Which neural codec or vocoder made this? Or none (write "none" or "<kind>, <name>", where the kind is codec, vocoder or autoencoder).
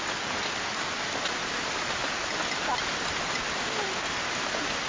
none